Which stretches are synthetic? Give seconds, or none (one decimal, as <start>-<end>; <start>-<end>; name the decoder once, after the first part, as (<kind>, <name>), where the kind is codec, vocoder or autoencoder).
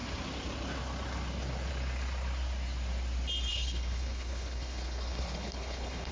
3.5-6.1 (codec, HILCodec)